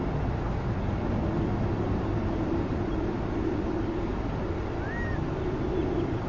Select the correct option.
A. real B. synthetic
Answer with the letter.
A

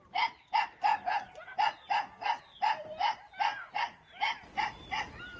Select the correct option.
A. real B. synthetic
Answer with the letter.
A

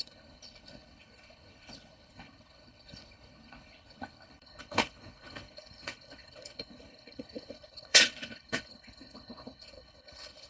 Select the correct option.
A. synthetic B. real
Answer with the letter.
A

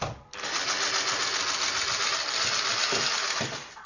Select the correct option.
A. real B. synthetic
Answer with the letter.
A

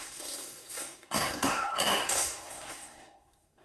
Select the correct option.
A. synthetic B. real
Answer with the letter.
A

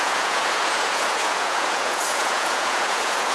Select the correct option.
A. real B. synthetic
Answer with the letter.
B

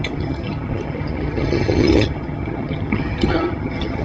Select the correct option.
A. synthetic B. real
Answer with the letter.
A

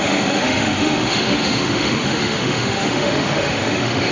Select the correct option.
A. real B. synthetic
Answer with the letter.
B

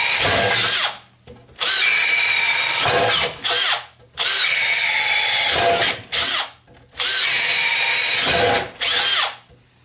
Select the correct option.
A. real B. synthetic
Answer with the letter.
A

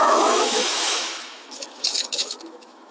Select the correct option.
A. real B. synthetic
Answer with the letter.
B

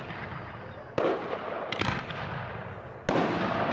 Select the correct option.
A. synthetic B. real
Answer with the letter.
B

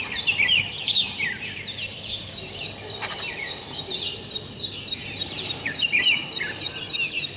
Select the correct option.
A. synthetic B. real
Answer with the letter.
A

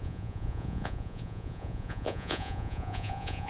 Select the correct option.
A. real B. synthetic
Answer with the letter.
B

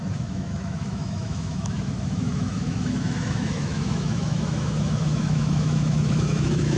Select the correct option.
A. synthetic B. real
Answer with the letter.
A